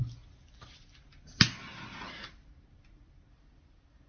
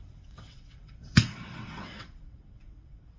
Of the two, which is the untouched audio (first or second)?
first